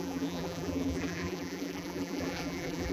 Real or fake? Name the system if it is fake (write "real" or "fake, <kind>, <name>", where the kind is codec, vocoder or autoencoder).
fake, vocoder, BigVGAN v2